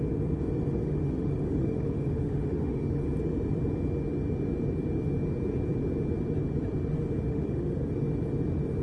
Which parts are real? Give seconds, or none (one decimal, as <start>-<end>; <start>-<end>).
0.0-0.8; 3.0-7.3; 7.9-8.8